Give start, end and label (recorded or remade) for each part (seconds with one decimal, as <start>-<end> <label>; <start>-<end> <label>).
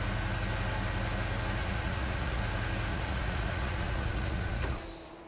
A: 0.0-1.6 recorded; 1.6-2.4 remade; 2.4-2.9 recorded; 2.9-4.8 remade; 4.8-5.3 recorded